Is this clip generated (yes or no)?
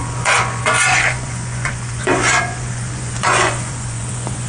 yes